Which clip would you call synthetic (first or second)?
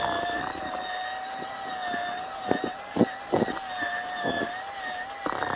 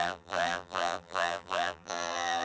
second